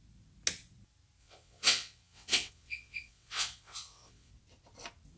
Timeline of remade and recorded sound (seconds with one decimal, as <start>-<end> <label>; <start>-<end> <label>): 0.0-1.2 recorded; 1.2-4.3 remade; 4.3-5.2 recorded